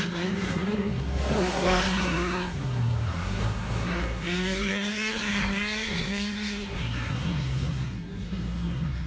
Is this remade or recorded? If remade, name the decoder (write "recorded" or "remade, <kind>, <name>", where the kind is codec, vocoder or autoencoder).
remade, codec, SNAC